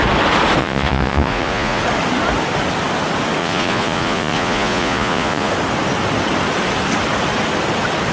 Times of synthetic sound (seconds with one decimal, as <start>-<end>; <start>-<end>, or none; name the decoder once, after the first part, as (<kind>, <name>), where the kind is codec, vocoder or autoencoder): 0.6-1.8 (vocoder, Vocos); 3.4-5.5